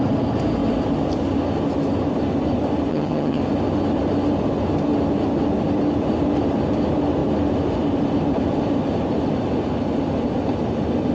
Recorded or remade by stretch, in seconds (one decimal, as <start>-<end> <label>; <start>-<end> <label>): 0.0-2.9 recorded; 2.9-3.4 remade; 3.4-11.1 recorded